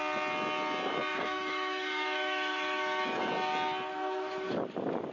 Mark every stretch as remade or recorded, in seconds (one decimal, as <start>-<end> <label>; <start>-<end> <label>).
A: 0.0-1.1 recorded; 1.1-3.3 remade; 3.3-3.9 recorded; 3.9-4.6 remade; 4.6-5.1 recorded